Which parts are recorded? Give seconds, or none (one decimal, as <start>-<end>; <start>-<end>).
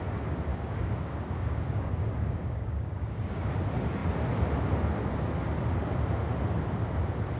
0.0-0.5; 3.5-7.4